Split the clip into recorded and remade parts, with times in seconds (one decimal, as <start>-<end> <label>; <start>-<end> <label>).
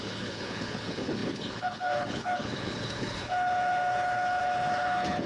0.0-5.3 remade